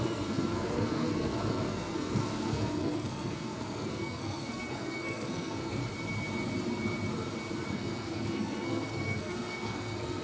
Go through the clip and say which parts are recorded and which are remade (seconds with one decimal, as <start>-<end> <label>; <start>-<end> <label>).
0.0-5.8 remade; 5.8-7.7 recorded; 7.7-10.2 remade